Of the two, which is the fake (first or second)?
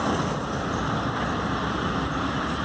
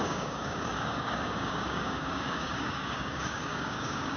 second